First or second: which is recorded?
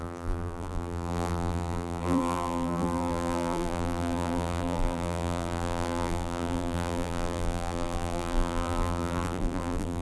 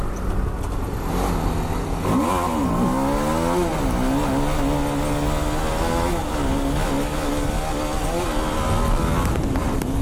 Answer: second